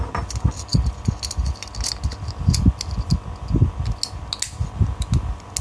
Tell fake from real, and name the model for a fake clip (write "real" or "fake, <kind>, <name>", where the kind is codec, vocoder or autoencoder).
real